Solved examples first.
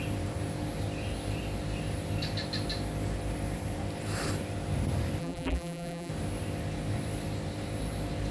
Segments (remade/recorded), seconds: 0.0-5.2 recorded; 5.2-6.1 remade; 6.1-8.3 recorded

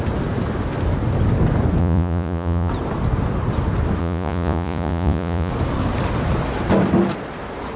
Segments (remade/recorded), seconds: 0.0-1.8 recorded; 1.8-2.7 remade; 2.7-4.0 recorded; 4.0-5.5 remade; 5.5-7.8 recorded

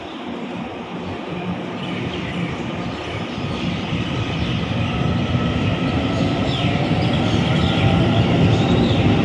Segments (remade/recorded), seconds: 0.0-9.2 remade

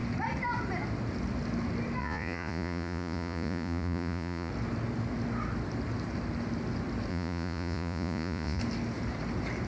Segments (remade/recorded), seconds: 0.0-2.0 recorded; 2.0-4.5 remade; 4.5-7.1 recorded; 7.1-8.6 remade; 8.6-9.7 recorded

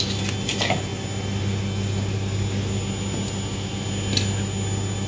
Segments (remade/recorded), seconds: 0.0-5.1 recorded

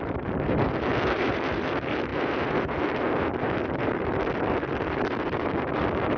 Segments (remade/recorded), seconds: 0.0-6.2 remade

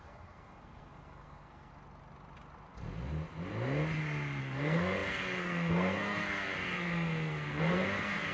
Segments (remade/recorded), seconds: 0.0-1.7 remade; 1.7-4.4 recorded; 4.4-8.3 remade

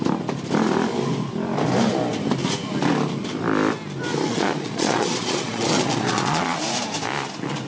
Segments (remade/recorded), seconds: 0.0-4.3 recorded; 4.3-6.6 remade; 6.6-7.7 recorded